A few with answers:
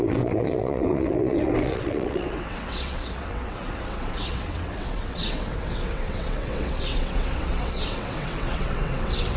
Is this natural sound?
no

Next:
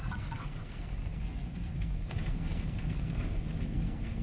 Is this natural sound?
no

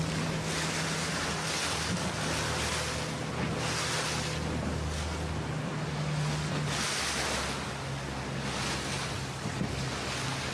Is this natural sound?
yes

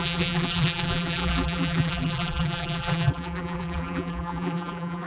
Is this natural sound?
no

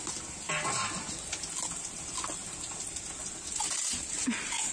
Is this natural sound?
yes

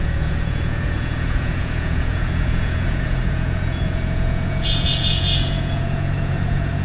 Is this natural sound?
no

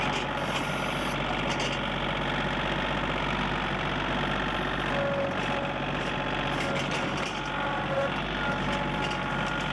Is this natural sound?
yes